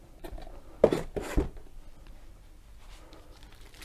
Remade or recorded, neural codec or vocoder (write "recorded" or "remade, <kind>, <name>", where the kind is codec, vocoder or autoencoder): remade, vocoder, BigVGAN v2